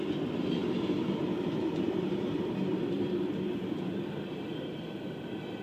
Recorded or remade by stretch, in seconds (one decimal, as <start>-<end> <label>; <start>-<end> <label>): 0.0-0.6 recorded; 0.6-2.8 remade; 2.8-5.6 recorded